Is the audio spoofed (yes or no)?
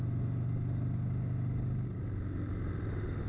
no